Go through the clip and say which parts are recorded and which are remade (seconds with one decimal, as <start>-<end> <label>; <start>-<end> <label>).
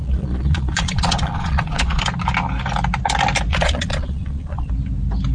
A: 0.0-2.0 remade; 2.0-3.5 recorded; 3.5-4.7 remade; 4.7-5.3 recorded